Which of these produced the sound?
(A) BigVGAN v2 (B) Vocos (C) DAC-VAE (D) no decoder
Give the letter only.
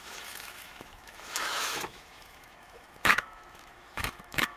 C